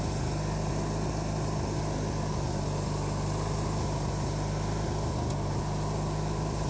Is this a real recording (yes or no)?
yes